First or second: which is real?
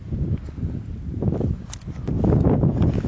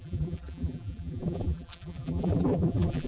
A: first